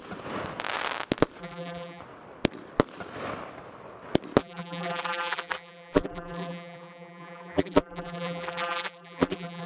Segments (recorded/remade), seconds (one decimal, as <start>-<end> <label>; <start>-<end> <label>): 0.0-1.4 recorded; 1.4-2.0 remade; 2.0-4.4 recorded; 4.4-9.7 remade

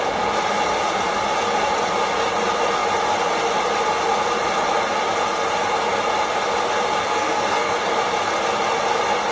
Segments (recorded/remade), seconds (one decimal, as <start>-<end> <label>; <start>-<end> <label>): 0.0-7.0 recorded; 7.0-7.7 remade; 7.7-9.3 recorded

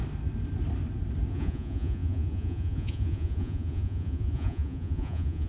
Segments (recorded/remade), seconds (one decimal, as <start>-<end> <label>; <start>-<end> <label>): 0.0-1.3 recorded; 1.3-5.5 remade

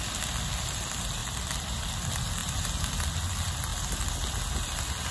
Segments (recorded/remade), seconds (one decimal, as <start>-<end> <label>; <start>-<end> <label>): 0.0-5.1 recorded

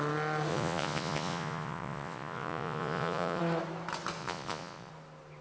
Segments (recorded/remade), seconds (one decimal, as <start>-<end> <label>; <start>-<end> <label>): 0.0-0.5 recorded; 0.5-3.4 remade; 3.4-4.2 recorded; 4.2-4.9 remade; 4.9-5.4 recorded

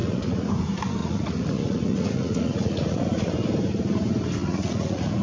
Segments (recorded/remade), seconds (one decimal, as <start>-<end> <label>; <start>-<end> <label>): 0.0-0.5 remade; 0.5-1.0 recorded; 1.0-3.3 remade; 3.3-4.4 recorded; 4.4-5.2 remade

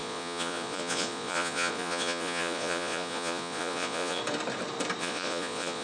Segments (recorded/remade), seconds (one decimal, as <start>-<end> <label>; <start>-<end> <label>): 0.0-4.2 remade; 4.2-5.0 recorded; 5.0-5.8 remade

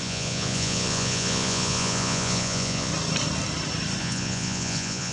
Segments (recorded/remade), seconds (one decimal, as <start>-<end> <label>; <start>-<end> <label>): 0.0-2.9 remade; 2.9-4.0 recorded; 4.0-5.1 remade